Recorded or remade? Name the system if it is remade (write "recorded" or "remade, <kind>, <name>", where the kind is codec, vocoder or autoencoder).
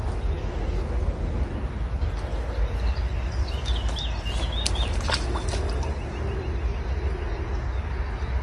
recorded